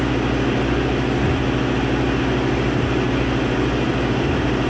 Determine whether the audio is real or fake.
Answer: real